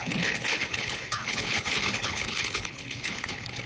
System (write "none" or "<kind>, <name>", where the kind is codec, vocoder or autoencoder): codec, HILCodec